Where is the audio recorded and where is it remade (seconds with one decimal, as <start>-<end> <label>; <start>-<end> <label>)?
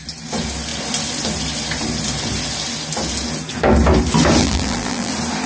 0.0-4.4 recorded; 4.4-5.1 remade; 5.1-5.5 recorded